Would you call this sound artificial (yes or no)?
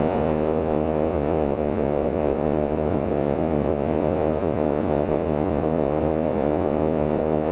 yes